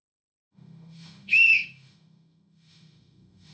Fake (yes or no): yes